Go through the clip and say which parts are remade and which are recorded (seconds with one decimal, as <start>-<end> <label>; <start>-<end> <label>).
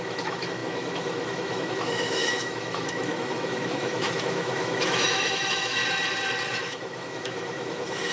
0.0-5.8 remade; 5.8-6.5 recorded; 6.5-8.1 remade